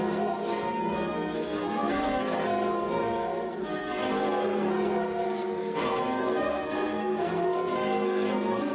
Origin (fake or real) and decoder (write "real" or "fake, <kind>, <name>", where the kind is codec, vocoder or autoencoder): fake, codec, SNAC